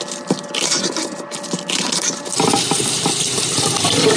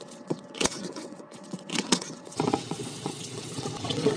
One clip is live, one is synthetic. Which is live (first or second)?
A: first